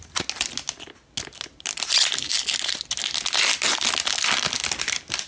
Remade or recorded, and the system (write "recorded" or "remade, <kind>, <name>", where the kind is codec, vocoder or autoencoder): recorded